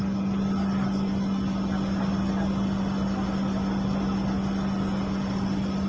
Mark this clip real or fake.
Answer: real